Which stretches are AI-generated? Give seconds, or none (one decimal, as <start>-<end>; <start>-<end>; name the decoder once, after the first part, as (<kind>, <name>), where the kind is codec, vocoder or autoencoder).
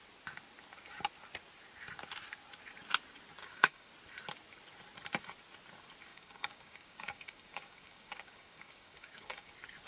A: 3.4-3.9 (codec, DAC); 6.1-9.5